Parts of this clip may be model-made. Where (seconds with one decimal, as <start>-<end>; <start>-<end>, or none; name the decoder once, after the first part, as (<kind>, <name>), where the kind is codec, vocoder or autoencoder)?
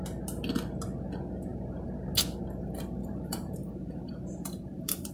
3.0-5.1 (vocoder, BigVGAN v2)